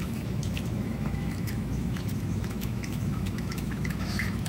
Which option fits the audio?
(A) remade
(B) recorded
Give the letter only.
A